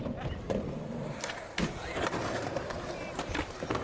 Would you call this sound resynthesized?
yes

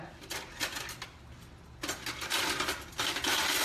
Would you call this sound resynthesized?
no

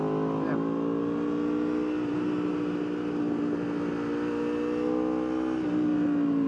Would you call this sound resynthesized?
no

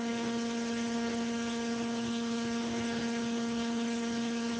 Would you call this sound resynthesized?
yes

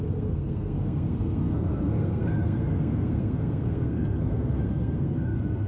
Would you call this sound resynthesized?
yes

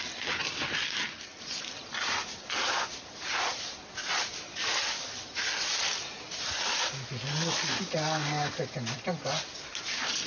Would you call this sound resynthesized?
no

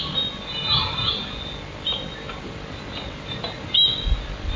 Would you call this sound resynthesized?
no